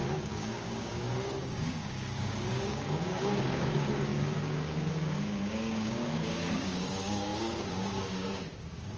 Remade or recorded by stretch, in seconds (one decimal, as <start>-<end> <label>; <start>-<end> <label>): 0.0-9.0 remade